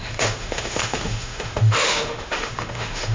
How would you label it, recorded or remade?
remade